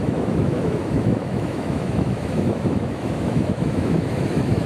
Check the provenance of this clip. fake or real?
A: fake